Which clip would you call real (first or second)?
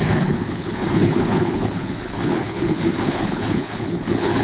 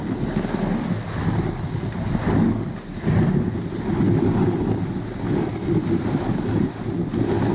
second